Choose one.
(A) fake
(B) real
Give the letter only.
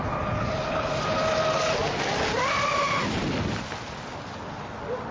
B